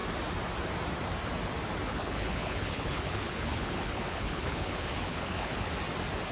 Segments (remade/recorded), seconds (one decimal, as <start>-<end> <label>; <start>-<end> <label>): 0.0-1.9 recorded; 1.9-5.7 remade; 5.7-6.3 recorded